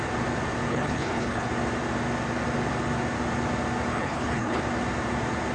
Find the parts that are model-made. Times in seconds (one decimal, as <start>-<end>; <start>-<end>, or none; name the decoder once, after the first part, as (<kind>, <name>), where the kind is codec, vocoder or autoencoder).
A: 0.7-1.5 (codec, HILCodec); 3.9-4.6